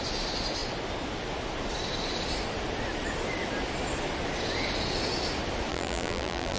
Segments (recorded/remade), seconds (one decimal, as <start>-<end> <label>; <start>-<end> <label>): 0.0-5.7 recorded; 5.7-6.6 remade